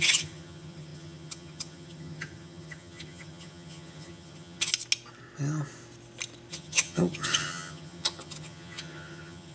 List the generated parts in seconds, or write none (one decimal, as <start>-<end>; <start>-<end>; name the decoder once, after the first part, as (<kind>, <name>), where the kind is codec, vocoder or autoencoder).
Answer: 0.0-4.7 (vocoder, HiFi-GAN); 6.5-9.5